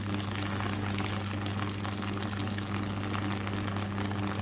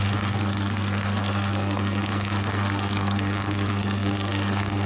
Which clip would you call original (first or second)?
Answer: first